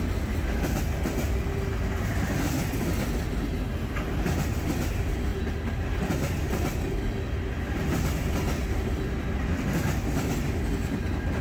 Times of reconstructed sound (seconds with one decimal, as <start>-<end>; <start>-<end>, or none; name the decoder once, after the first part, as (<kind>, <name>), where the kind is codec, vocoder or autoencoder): none